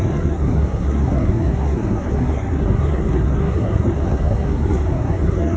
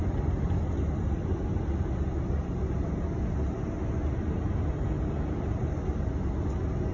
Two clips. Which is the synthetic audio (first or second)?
first